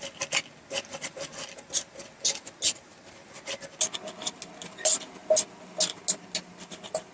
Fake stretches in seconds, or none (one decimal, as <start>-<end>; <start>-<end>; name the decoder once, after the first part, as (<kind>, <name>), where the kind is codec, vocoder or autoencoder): none